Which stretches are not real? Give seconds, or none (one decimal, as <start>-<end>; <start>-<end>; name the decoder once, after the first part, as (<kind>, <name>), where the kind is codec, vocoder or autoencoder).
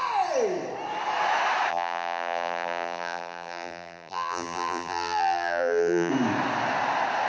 1.7-6.1 (vocoder, BigVGAN v2)